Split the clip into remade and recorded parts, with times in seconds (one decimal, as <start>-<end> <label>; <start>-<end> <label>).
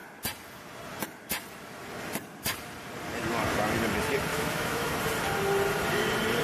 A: 0.0-4.3 recorded; 4.3-4.9 remade; 4.9-6.4 recorded